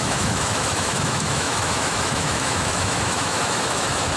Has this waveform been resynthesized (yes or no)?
yes